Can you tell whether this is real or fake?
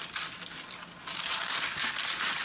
real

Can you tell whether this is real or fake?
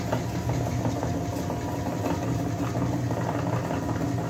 real